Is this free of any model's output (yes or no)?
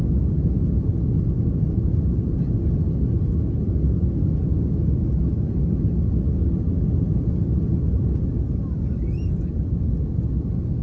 yes